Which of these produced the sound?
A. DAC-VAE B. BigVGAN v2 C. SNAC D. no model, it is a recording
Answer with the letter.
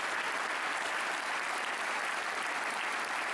D